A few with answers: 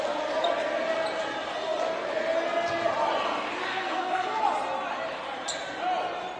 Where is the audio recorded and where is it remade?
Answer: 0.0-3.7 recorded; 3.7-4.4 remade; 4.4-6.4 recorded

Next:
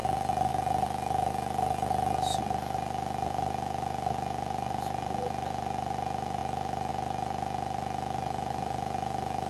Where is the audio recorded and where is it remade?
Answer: 0.0-9.5 recorded

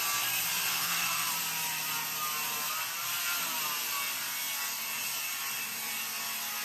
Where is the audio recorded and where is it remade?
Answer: 0.0-0.7 recorded; 0.7-1.3 remade; 1.3-6.6 recorded

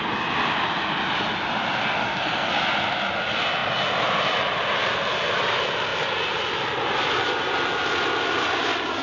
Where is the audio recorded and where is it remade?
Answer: 0.0-1.8 recorded; 1.8-2.5 remade; 2.5-9.0 recorded

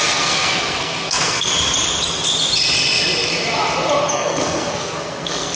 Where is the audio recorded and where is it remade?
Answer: 0.0-1.5 remade; 1.5-4.1 recorded; 4.1-5.5 remade